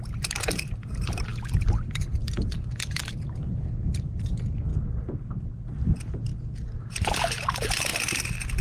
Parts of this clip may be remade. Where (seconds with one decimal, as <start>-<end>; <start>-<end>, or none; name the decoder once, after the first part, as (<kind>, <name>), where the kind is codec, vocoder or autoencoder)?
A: 0.0-4.7 (vocoder, BigVGAN v2); 5.7-6.3; 6.8-7.9